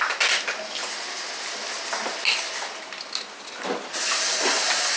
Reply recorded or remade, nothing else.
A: recorded